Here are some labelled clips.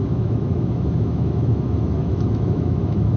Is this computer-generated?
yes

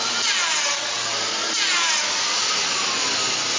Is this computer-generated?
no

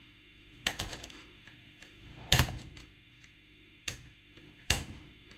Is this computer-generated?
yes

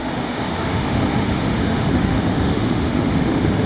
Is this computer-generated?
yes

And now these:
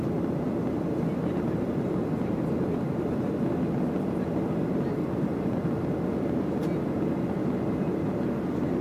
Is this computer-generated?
no